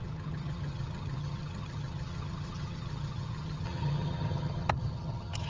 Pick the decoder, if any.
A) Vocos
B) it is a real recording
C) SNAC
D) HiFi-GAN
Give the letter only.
D